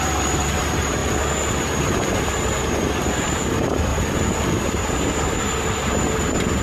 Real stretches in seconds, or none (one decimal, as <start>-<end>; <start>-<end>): 1.0-2.3; 3.9-4.6